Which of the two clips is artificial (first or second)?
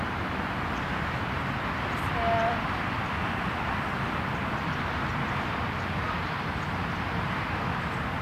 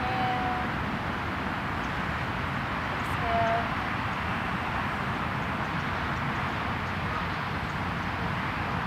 first